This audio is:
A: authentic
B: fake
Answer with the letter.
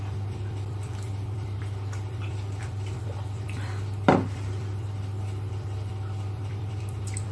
B